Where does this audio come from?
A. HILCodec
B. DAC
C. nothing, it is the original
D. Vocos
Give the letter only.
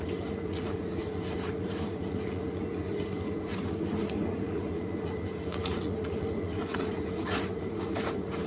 D